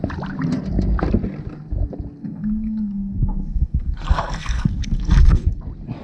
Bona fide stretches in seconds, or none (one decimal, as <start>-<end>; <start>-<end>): 0.0-2.2; 5.6-6.0